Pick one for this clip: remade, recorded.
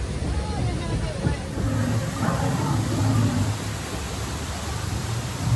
recorded